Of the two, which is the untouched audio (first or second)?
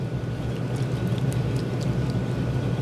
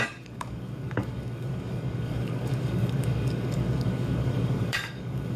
first